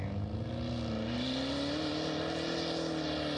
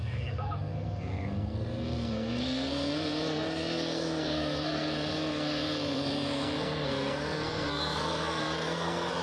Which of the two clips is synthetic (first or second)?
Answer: second